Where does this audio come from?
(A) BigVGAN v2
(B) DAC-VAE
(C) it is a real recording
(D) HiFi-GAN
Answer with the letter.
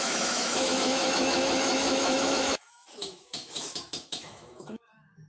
B